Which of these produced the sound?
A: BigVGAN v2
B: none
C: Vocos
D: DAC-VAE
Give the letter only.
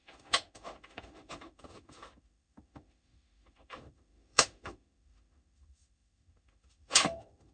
D